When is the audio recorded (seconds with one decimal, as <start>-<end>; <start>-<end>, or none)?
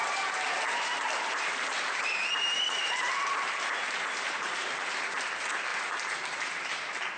5.7-6.4